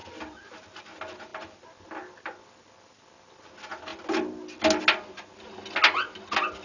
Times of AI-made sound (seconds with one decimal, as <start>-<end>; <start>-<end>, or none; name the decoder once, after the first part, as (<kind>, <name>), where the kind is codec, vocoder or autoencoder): none